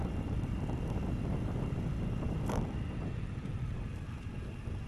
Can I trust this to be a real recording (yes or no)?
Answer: yes